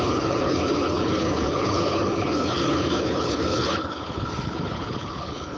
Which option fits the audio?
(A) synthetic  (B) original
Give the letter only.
A